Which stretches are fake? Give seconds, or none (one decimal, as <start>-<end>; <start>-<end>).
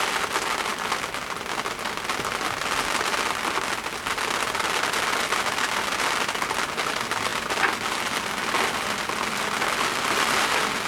none